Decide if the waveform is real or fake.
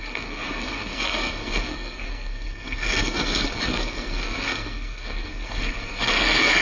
fake